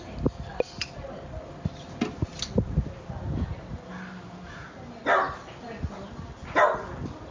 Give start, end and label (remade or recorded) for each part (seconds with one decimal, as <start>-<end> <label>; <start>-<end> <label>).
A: 0.0-7.3 recorded